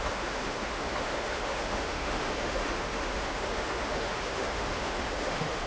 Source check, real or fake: fake